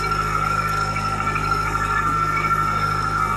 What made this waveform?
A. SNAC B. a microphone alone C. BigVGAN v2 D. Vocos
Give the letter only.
A